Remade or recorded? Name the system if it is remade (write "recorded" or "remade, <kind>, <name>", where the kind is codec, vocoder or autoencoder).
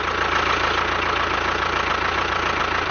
recorded